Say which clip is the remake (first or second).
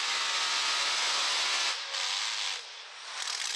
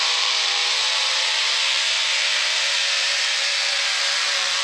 second